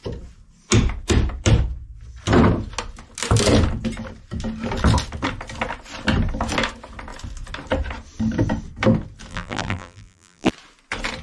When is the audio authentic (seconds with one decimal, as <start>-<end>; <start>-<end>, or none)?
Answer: 0.0-9.3; 10.5-11.2